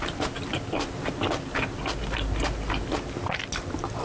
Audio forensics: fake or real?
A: real